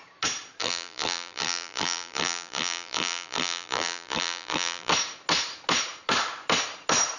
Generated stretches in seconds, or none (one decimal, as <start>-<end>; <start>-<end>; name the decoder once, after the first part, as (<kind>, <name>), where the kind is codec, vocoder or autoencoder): 0.6-4.9 (vocoder, BigVGAN v2)